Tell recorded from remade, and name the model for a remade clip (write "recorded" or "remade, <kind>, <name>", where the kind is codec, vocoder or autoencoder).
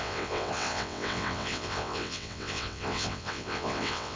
remade, vocoder, WaveNeXt